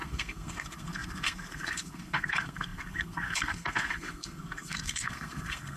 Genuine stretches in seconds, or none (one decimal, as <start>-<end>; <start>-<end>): none

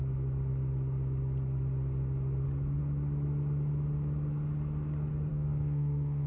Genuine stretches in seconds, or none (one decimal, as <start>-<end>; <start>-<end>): 0.0-5.3